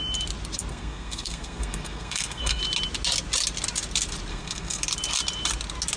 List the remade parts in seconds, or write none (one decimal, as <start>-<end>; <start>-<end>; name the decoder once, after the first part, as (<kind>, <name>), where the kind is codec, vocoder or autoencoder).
0.7-2.6 (codec, SNAC); 4.3-4.8